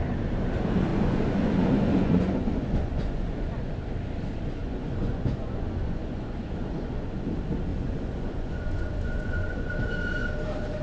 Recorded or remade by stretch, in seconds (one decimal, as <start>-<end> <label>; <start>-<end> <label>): 0.0-0.9 recorded; 0.9-3.7 remade; 3.7-4.6 recorded; 4.6-7.3 remade; 7.3-7.7 recorded; 7.7-9.7 remade; 9.7-10.8 recorded